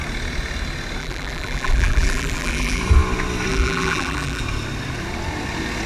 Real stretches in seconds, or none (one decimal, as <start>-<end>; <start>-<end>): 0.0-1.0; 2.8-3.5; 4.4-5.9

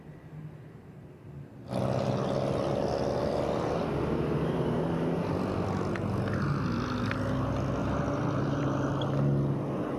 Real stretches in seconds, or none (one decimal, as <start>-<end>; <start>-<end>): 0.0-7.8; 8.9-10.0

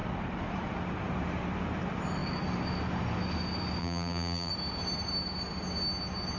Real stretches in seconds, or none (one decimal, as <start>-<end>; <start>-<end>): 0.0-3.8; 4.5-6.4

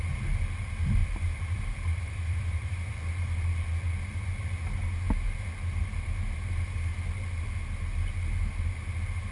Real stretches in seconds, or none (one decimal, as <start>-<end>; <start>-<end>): 0.0-1.0; 2.9-9.3